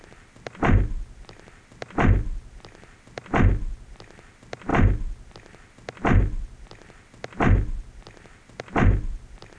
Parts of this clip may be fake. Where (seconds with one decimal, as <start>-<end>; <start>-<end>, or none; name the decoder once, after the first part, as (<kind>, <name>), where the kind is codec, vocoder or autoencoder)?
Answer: none